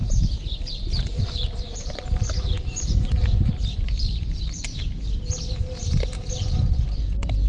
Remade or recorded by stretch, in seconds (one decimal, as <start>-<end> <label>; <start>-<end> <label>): 0.0-4.7 remade; 4.7-6.3 recorded; 6.3-7.5 remade